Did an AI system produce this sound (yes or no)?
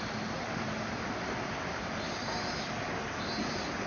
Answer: no